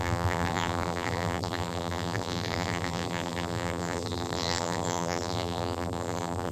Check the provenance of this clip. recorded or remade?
remade